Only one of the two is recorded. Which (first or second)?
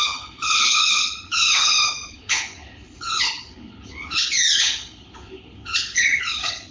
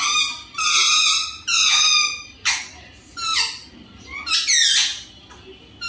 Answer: second